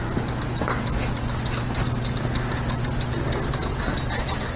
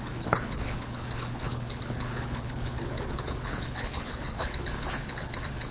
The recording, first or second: first